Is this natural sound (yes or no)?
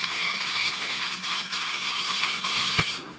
no